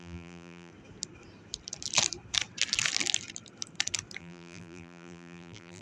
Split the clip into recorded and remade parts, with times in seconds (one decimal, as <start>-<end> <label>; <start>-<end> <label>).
0.0-0.7 remade; 0.7-4.2 recorded; 4.2-5.8 remade